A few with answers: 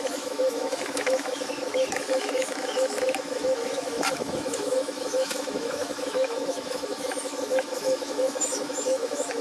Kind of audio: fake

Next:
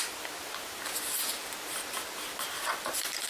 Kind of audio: real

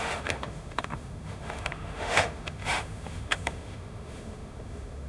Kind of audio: fake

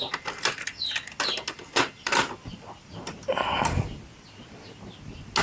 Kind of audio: real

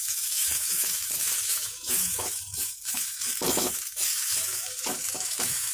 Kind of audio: fake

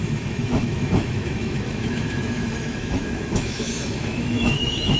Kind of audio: fake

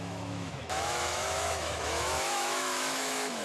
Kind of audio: fake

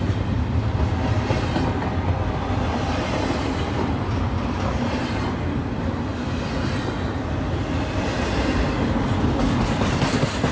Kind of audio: real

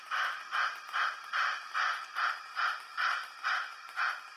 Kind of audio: real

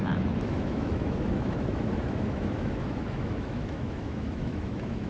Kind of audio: fake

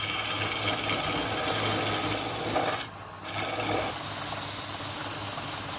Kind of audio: real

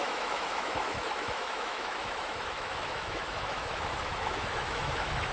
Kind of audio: fake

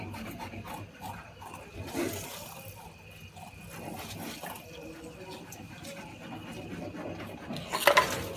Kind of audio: real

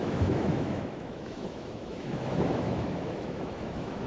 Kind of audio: fake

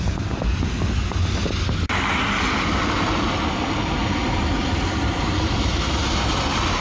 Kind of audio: real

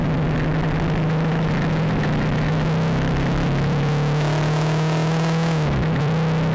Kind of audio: real